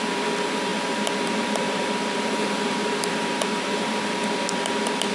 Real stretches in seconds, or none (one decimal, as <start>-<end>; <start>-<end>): 4.2-5.1